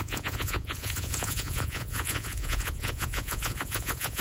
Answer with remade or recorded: remade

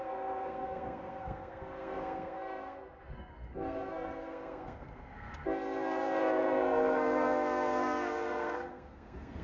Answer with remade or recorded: remade